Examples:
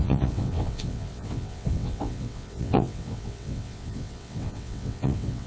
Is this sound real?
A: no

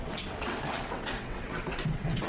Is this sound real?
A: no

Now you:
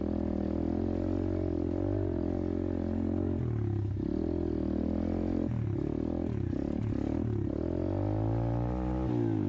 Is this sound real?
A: yes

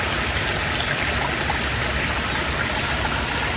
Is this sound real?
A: yes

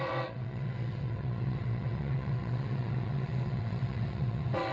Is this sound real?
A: no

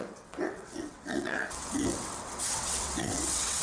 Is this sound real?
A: no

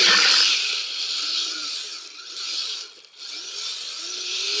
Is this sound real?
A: yes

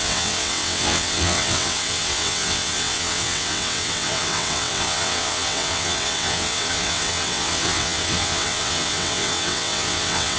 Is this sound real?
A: no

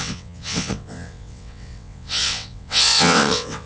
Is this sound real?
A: no